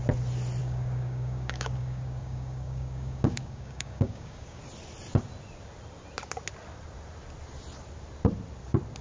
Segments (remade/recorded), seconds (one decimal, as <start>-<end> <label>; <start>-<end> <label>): 0.0-0.6 recorded; 0.6-4.6 remade; 4.6-9.0 recorded